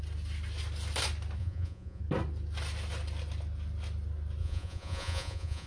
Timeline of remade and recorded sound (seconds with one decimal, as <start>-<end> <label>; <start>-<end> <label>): 0.0-1.4 recorded; 1.4-2.0 remade; 2.0-4.4 recorded; 4.4-5.7 remade